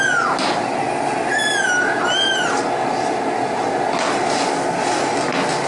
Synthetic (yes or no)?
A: no